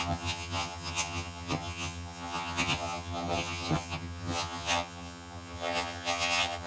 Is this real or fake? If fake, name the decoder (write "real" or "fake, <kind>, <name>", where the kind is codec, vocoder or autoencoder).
fake, vocoder, HiFi-GAN